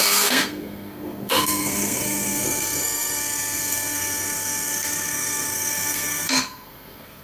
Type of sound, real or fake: fake